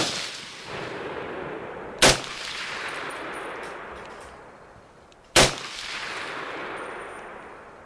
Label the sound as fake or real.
fake